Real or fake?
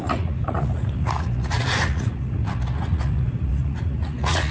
fake